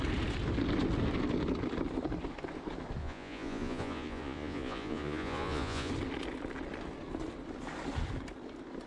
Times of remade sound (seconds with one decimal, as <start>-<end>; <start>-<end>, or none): 3.0-5.9